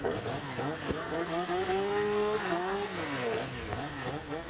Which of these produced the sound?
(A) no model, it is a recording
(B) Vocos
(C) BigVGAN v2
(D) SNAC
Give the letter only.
D